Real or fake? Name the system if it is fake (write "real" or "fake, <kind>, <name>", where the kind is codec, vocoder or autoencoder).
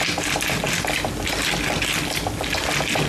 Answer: real